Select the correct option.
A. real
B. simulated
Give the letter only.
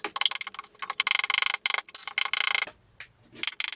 A